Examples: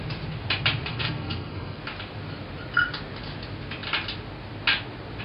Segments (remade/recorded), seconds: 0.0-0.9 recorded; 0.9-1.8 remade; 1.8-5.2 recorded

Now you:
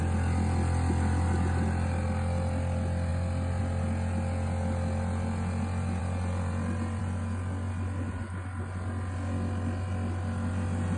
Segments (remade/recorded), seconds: 0.0-11.0 recorded

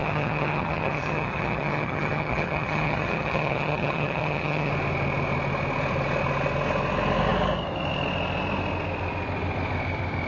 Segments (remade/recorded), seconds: 0.0-4.7 remade; 4.7-10.3 recorded